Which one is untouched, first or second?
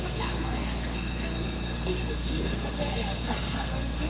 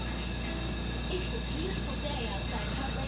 second